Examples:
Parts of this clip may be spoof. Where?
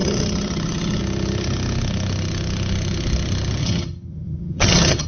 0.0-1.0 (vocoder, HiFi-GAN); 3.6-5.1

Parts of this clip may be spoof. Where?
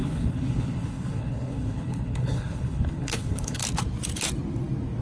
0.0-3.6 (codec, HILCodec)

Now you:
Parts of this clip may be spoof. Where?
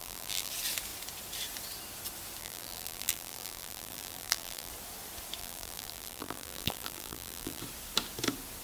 0.0-0.5 (vocoder, BigVGAN v2); 2.4-4.7; 5.4-7.6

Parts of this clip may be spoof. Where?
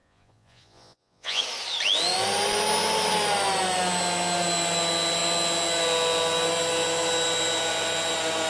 0.0-1.4 (vocoder, Vocos)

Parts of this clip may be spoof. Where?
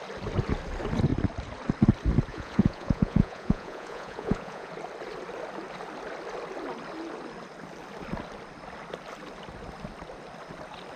2.3-4.7 (vocoder, Vocos)